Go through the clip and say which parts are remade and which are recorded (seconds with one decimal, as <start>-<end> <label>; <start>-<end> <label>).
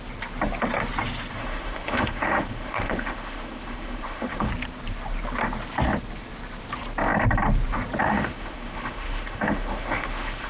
0.0-1.4 recorded; 1.4-4.5 remade; 4.5-8.0 recorded; 8.0-10.5 remade